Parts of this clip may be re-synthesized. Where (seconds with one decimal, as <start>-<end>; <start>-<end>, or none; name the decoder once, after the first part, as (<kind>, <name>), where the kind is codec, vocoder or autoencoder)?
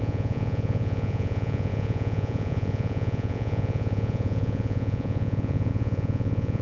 0.0-6.6 (vocoder, Vocos)